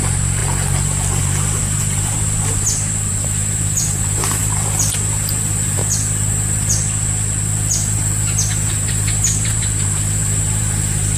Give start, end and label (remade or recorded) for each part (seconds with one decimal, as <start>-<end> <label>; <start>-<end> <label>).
0.0-5.8 remade; 5.8-8.7 recorded; 8.7-11.2 remade